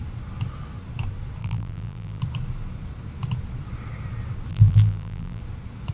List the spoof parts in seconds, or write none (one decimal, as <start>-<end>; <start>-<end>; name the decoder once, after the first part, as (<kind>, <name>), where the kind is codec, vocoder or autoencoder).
1.4-2.2 (vocoder, BigVGAN v2); 4.5-5.4